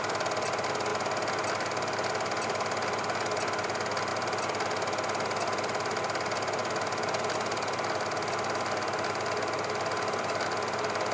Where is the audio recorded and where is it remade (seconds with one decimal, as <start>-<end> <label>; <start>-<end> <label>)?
0.0-11.1 recorded